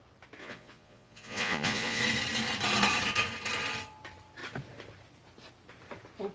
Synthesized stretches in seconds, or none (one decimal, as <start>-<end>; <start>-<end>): 0.4-2.0